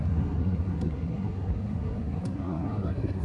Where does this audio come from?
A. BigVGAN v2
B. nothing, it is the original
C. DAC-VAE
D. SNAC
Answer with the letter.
D